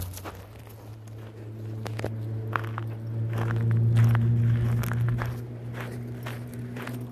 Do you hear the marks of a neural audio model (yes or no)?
no